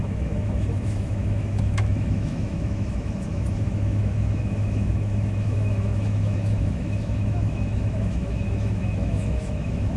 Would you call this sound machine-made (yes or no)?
yes